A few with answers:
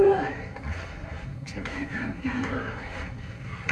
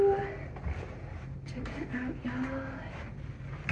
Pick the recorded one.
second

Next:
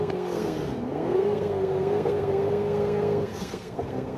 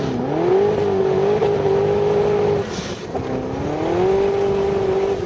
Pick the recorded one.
second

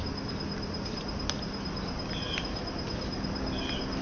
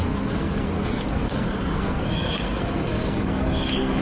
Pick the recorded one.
first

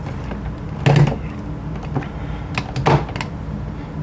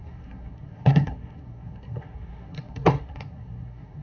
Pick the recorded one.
first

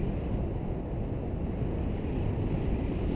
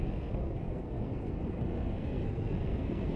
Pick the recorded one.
first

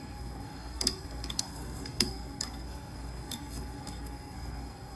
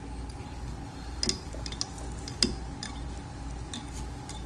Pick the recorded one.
second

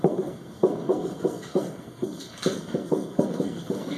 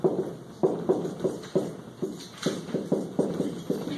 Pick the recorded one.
second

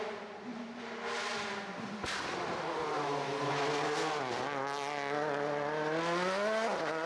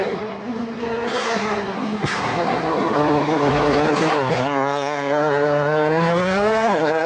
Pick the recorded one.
first